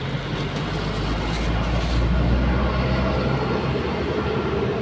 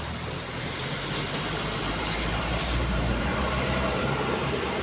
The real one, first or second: first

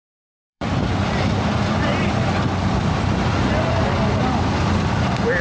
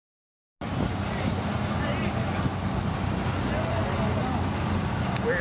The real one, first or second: second